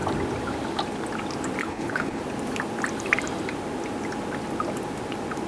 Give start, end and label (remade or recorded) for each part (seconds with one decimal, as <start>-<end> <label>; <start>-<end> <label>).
0.0-1.6 recorded; 1.6-2.2 remade; 2.2-5.5 recorded